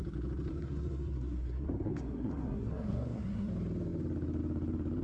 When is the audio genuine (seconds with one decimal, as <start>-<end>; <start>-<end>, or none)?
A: 0.0-0.5; 3.5-5.0